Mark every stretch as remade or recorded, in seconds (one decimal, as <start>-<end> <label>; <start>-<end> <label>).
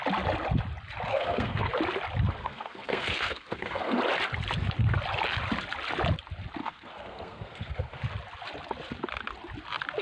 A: 0.0-1.1 recorded; 1.1-1.7 remade; 1.7-2.4 recorded; 2.4-4.0 remade; 4.0-6.6 recorded; 6.6-8.0 remade; 8.0-10.0 recorded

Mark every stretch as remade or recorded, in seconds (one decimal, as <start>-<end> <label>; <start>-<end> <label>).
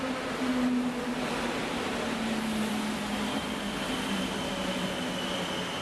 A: 0.0-5.8 recorded